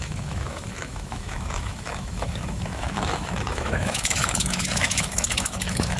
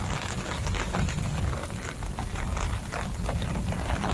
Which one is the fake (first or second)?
first